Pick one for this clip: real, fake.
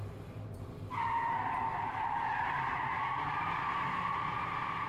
real